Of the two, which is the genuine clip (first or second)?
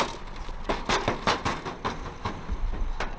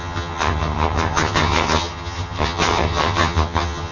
first